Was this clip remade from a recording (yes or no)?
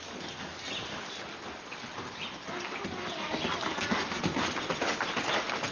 no